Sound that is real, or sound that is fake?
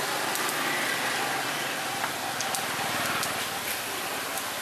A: real